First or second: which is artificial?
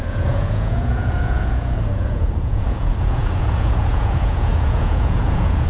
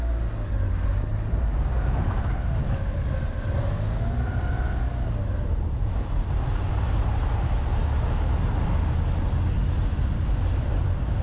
first